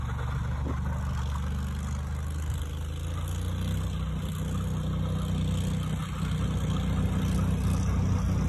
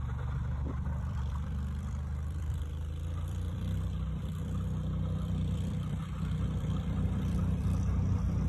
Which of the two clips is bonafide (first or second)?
first